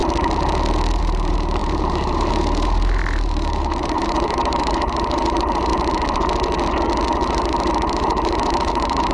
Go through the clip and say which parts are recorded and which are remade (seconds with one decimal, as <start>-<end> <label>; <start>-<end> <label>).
0.0-1.0 recorded; 1.0-5.7 remade; 5.7-7.1 recorded; 7.1-9.1 remade